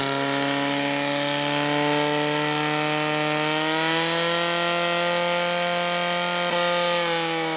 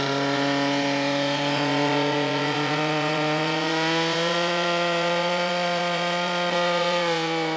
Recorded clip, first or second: first